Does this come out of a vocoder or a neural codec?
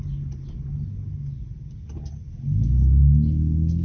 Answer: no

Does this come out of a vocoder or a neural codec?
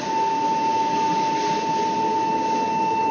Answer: no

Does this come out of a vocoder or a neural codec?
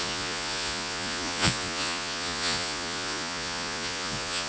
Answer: yes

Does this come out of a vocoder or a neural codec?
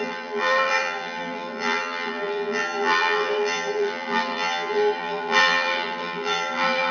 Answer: yes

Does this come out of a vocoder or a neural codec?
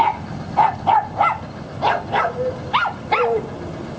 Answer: no